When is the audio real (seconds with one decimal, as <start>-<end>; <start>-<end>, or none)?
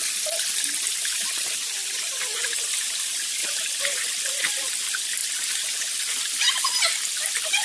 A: 0.0-1.8; 3.5-7.6